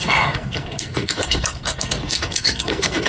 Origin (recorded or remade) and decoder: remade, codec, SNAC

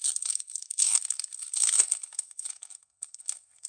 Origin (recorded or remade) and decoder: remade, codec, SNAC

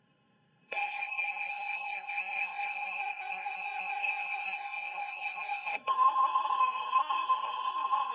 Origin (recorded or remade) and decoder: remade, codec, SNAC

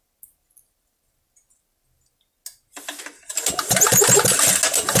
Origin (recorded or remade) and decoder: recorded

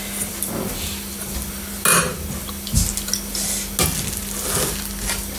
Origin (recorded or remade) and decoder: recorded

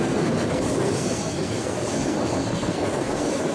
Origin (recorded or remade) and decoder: remade, codec, SNAC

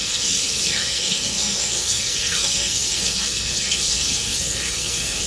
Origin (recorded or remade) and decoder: remade, codec, SNAC